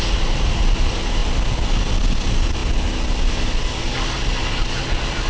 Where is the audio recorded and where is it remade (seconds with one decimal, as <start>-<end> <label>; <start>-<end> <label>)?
0.0-5.3 recorded

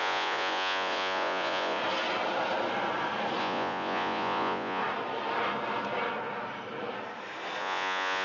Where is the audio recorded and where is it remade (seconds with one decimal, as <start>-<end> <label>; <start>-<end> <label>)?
0.0-1.8 remade; 1.8-3.4 recorded; 3.4-4.8 remade; 4.8-7.6 recorded; 7.6-8.2 remade

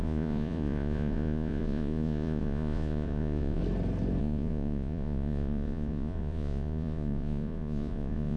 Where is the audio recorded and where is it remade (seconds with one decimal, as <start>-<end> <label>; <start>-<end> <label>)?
0.0-3.6 remade; 3.6-4.2 recorded; 4.2-8.4 remade

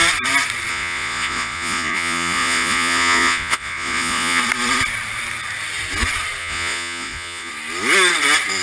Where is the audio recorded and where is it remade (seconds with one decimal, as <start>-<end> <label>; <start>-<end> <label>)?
0.0-0.7 recorded; 0.7-4.4 remade; 4.4-6.4 recorded; 6.4-7.5 remade; 7.5-8.6 recorded

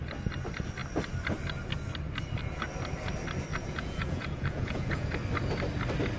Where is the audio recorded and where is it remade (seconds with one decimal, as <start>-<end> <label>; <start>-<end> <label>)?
0.0-3.5 recorded; 3.5-5.1 remade; 5.1-6.2 recorded

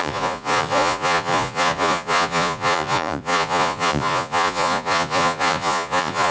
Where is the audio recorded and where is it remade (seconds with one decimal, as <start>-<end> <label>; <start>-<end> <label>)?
0.0-6.3 remade

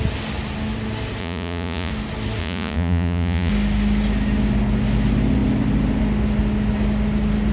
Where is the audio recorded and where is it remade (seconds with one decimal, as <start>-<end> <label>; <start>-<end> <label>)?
0.0-1.2 recorded; 1.2-1.9 remade; 1.9-2.4 recorded; 2.4-3.5 remade; 3.5-7.5 recorded